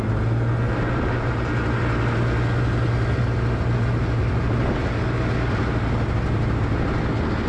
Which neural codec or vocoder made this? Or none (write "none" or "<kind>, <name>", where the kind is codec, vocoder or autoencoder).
none